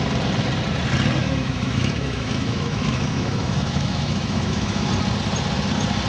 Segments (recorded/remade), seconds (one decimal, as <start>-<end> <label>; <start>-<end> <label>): 0.0-1.2 recorded; 1.2-4.9 remade; 4.9-6.1 recorded